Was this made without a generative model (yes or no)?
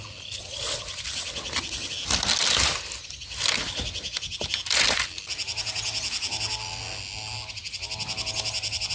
yes